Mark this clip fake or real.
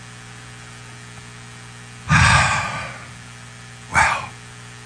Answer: real